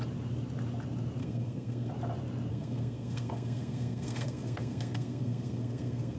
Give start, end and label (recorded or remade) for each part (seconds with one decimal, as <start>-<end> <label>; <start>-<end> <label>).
0.0-1.2 recorded; 1.2-1.9 remade; 1.9-2.5 recorded; 2.5-6.2 remade